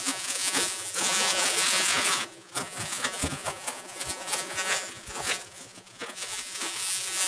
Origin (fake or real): fake